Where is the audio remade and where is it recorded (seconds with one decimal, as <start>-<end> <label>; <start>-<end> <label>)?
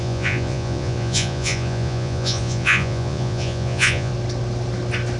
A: 0.0-4.1 remade; 4.1-5.2 recorded